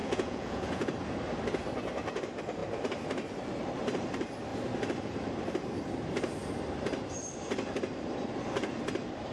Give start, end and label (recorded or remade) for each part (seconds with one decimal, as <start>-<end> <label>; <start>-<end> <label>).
0.0-0.9 remade; 0.9-9.3 recorded